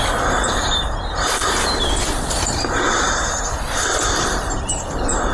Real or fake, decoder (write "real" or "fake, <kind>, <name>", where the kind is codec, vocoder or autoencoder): fake, vocoder, BigVGAN v2